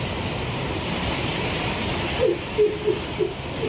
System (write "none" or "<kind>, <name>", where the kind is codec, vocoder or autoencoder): none